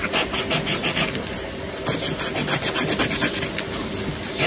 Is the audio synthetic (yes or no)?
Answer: no